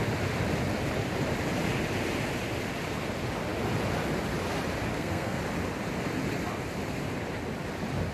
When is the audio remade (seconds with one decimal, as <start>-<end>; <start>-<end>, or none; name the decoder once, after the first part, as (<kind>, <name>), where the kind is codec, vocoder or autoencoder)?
4.9-5.4 (codec, SNAC)